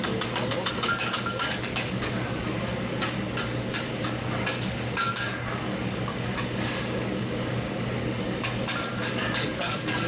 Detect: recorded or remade remade